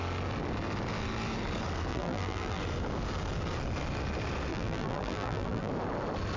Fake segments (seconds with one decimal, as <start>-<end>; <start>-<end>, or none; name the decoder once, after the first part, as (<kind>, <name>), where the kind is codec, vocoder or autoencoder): 1.9-2.6 (vocoder, BigVGAN v2); 4.5-5.7